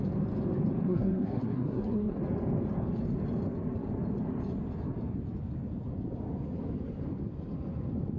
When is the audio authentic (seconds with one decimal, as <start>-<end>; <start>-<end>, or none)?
0.0-0.8; 2.2-8.2